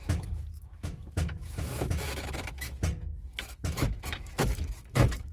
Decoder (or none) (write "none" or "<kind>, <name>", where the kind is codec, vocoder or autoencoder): autoencoder, DAC-VAE